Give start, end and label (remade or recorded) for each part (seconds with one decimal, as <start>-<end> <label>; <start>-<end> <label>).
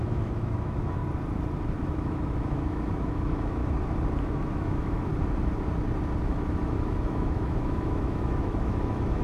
0.0-1.0 remade; 1.0-1.8 recorded; 1.8-3.6 remade; 3.6-4.2 recorded; 4.2-5.1 remade; 5.1-6.2 recorded; 6.2-9.2 remade